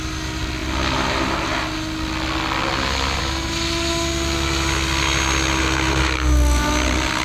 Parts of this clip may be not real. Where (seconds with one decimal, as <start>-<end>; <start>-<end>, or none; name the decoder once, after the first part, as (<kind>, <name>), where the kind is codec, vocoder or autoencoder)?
none